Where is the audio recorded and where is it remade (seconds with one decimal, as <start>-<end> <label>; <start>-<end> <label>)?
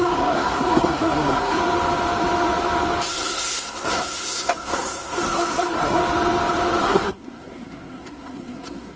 0.0-1.6 remade; 1.6-3.1 recorded; 3.1-6.0 remade; 6.0-6.8 recorded; 6.8-9.0 remade